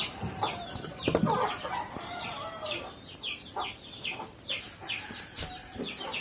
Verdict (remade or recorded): remade